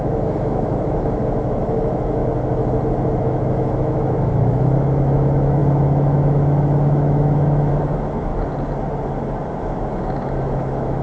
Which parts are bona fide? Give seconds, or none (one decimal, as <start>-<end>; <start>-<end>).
2.2-3.2; 8.3-9.5